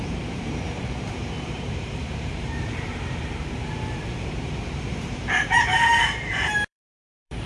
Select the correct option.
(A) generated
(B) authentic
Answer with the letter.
A